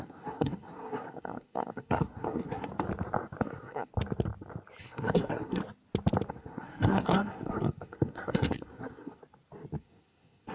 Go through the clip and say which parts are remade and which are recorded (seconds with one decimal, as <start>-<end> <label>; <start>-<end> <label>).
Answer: 0.0-2.7 remade; 2.7-3.4 recorded; 3.4-3.9 remade; 3.9-4.8 recorded; 4.8-5.6 remade; 5.6-6.3 recorded; 6.3-9.2 remade; 9.2-9.8 recorded; 9.8-10.5 remade